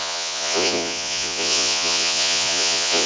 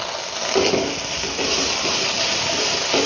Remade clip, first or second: first